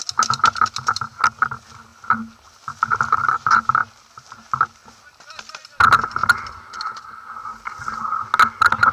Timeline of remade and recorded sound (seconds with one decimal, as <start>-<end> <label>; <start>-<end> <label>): 0.0-8.9 recorded